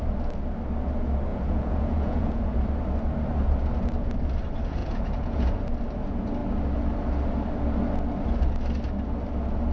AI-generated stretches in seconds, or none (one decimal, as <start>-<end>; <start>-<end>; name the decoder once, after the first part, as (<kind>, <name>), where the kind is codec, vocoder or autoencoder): 1.3-2.7 (vocoder, Vocos); 4.8-5.6